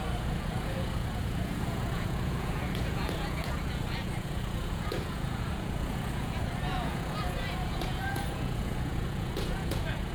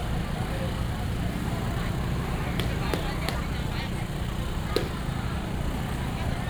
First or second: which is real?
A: second